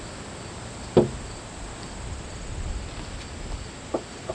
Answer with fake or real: real